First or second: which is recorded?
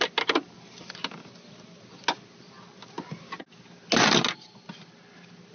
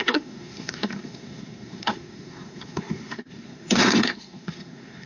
first